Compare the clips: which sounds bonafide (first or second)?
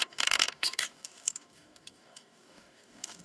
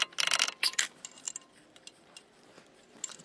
second